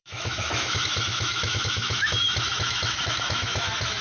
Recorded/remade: remade